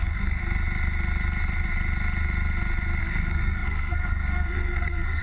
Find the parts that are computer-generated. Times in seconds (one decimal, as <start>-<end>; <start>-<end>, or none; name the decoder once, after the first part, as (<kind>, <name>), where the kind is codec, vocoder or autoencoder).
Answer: 0.0-0.4 (codec, SNAC); 3.0-5.2